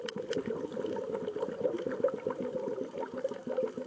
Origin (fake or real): real